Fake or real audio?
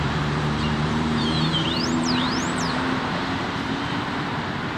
fake